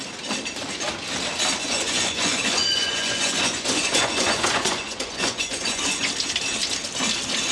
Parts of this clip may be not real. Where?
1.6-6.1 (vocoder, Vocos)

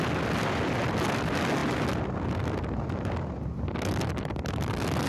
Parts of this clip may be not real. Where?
none

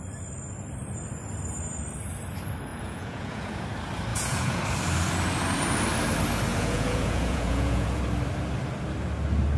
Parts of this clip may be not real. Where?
2.7-3.6 (vocoder, Vocos); 4.1-4.6; 6.5-8.0

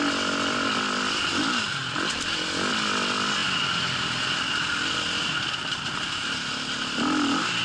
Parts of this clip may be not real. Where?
none

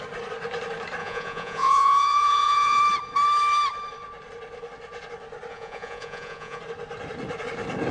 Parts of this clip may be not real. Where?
1.0-2.8 (vocoder, Vocos); 5.5-6.6

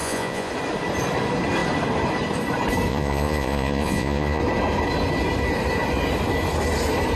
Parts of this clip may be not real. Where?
0.0-0.5 (vocoder, Vocos); 2.9-4.4

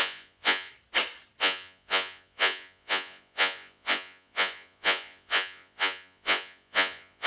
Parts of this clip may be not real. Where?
0.0-0.7 (vocoder, Vocos); 1.4-7.3